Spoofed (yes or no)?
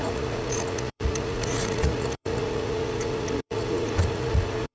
yes